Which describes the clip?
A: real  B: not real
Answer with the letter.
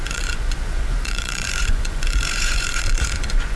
B